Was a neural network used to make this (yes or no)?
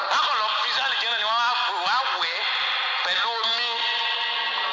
no